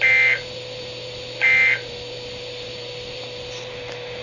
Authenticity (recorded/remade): recorded